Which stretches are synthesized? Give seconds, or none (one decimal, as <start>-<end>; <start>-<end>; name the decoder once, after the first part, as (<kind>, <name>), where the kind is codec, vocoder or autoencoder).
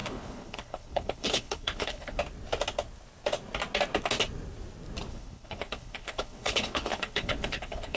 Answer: 0.0-2.2 (codec, HILCodec); 5.1-8.0